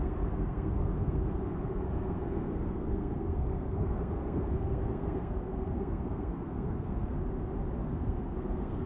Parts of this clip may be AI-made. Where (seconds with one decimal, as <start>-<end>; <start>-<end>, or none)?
0.0-7.2; 7.8-8.9